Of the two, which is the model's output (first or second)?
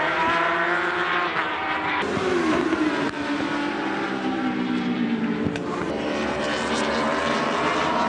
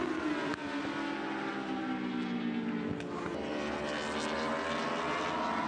first